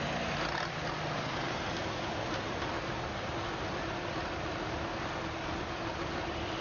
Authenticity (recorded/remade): recorded